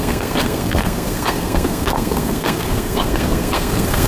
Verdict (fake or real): fake